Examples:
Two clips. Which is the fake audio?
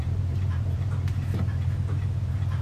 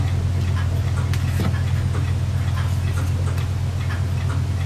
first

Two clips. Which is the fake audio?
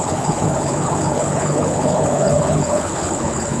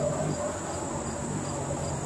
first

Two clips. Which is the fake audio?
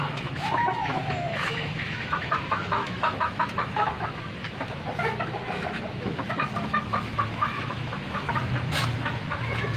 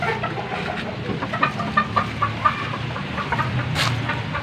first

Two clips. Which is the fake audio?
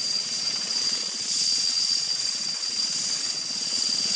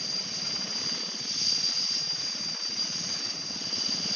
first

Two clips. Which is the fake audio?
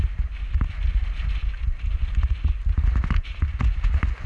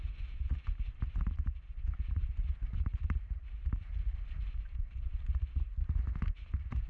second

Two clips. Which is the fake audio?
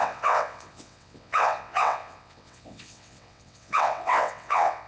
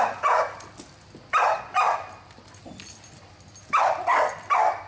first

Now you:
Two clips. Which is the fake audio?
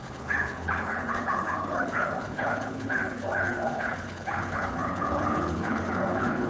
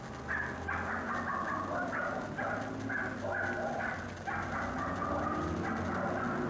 first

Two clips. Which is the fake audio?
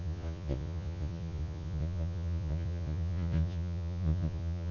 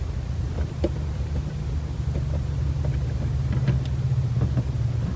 first